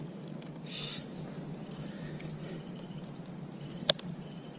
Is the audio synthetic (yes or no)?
no